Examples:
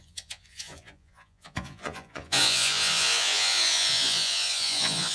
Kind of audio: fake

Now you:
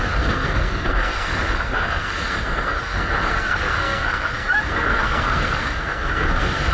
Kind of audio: fake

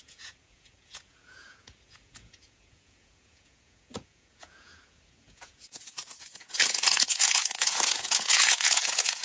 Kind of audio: fake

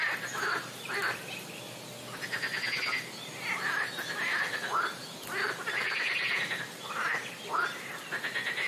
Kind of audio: real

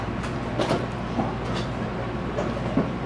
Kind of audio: real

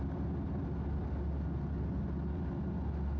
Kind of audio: real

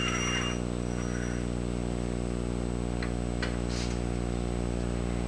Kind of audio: real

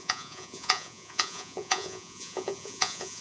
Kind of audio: fake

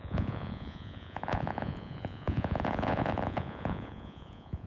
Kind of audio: fake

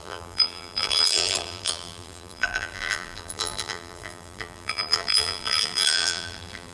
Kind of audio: fake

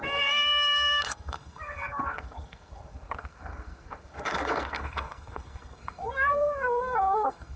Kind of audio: fake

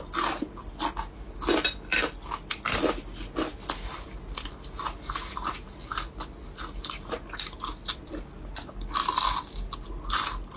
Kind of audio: real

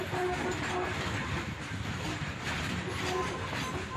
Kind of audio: real